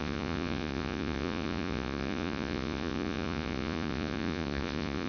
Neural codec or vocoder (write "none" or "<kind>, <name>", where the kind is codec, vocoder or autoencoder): vocoder, Vocos